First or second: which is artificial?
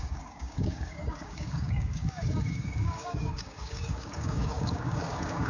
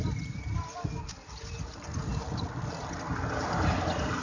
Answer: first